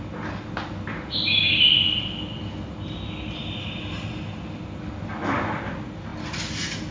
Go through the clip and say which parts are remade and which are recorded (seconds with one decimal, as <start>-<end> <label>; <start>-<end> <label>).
0.0-6.9 recorded